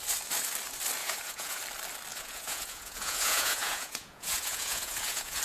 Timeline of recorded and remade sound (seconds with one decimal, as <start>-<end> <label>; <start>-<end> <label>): 0.0-1.0 recorded; 1.0-1.6 remade; 1.6-2.1 recorded; 2.1-5.4 remade